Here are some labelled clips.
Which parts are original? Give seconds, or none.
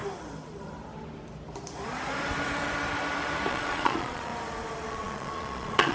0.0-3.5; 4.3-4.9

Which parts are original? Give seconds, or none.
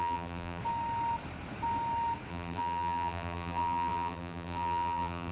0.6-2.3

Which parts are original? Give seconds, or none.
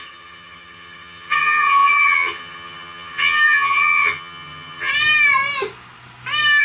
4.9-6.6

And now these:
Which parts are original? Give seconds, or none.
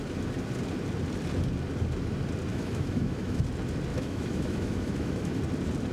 0.0-2.5; 3.4-3.9; 5.4-5.9